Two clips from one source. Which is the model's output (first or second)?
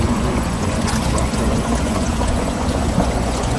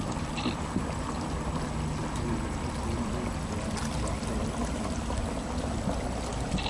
first